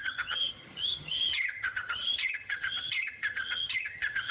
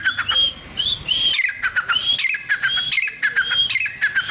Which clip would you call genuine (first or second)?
second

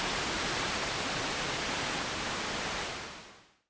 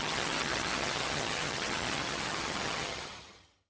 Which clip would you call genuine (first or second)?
first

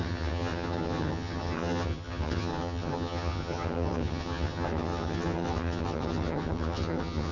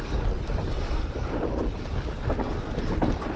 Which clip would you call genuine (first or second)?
second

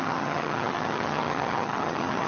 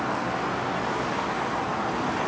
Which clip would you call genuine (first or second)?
second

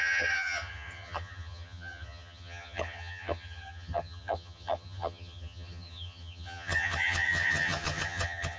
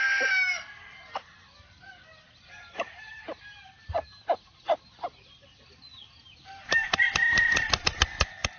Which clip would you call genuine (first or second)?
second